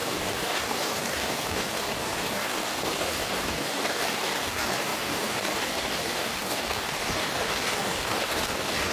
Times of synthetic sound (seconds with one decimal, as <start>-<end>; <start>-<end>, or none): 0.0-8.9